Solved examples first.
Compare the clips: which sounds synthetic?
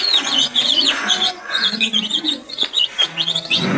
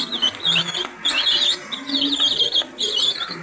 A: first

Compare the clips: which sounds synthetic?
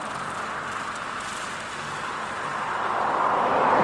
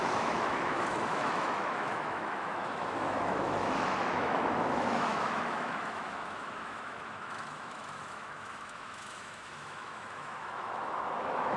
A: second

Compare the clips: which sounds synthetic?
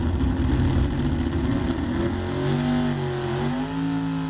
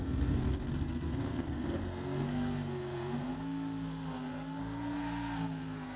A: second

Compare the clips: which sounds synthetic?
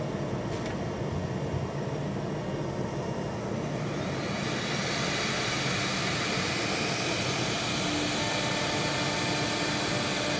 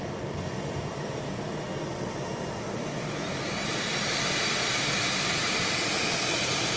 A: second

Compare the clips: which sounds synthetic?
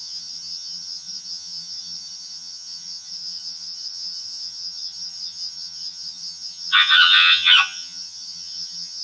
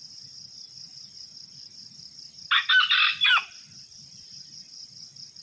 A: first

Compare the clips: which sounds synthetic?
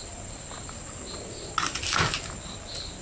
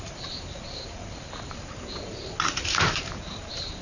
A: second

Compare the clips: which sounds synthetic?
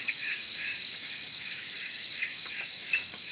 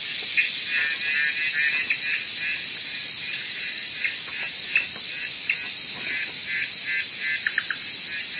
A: first